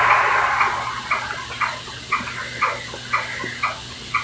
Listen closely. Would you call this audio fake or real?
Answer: real